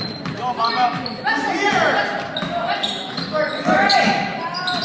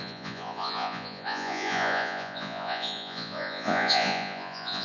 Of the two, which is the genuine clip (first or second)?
first